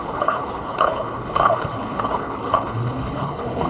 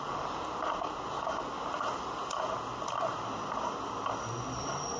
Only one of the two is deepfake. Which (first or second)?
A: first